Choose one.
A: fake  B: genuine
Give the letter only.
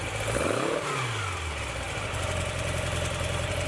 B